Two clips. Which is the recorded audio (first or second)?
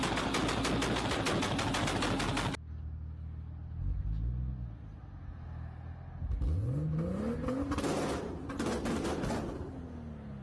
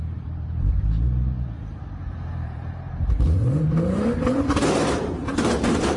first